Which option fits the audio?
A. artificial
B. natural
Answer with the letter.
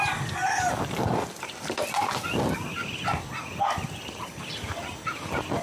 B